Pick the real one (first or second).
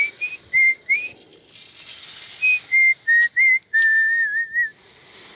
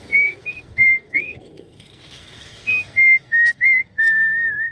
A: first